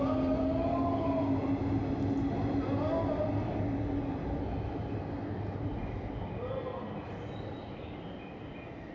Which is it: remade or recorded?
recorded